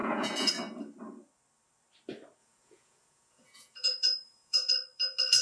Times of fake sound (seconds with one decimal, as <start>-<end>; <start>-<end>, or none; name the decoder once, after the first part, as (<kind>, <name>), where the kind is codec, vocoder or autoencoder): 0.0-0.5 (vocoder, Vocos); 2.4-4.7